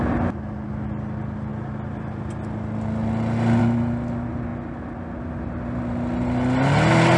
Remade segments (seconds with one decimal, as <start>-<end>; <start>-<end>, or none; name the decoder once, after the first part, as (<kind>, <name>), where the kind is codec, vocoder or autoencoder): none